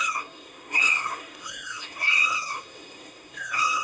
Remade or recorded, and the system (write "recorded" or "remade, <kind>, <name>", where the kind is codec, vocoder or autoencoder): remade, codec, SNAC